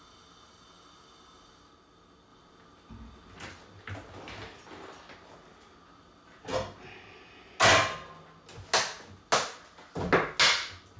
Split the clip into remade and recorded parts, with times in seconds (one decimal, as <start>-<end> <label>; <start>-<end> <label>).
0.0-11.0 recorded